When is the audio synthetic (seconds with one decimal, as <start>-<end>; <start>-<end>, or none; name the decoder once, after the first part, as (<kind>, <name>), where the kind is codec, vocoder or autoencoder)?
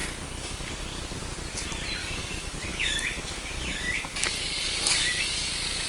0.0-1.0 (codec, DAC); 2.0-5.5